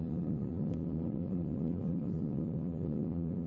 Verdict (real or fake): fake